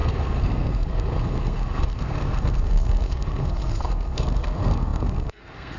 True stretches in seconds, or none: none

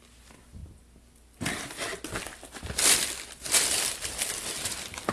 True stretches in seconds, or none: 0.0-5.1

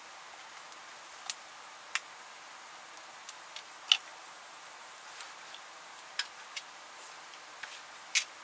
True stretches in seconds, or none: 0.0-8.4